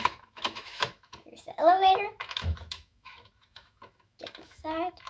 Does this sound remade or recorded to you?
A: remade